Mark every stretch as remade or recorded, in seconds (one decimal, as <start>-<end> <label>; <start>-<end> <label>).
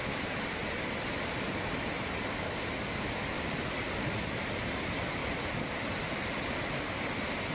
0.0-1.7 remade; 1.7-3.3 recorded; 3.3-3.9 remade; 3.9-5.2 recorded; 5.2-6.7 remade; 6.7-7.5 recorded